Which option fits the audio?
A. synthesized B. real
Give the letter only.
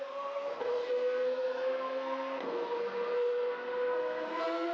A